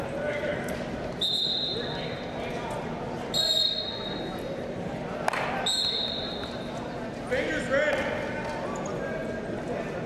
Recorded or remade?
recorded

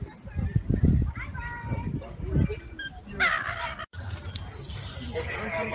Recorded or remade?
recorded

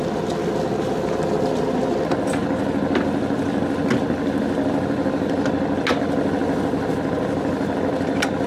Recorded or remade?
recorded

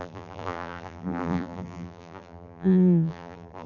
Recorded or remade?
remade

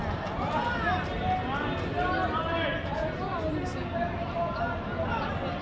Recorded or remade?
recorded